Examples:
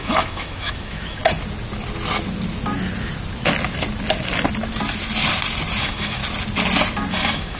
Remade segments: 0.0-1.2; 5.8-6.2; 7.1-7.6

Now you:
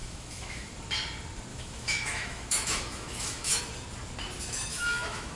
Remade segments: 0.0-0.7; 1.5-3.6; 4.7-5.4

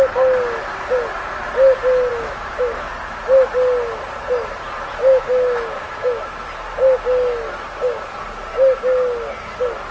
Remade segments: 2.1-2.9; 5.0-6.4

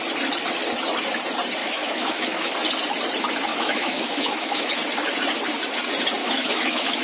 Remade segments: 1.6-2.5; 3.5-4.7; 6.2-7.0